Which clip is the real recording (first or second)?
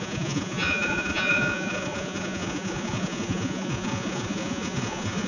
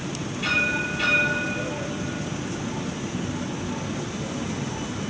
second